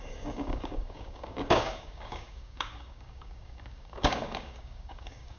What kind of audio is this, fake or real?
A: fake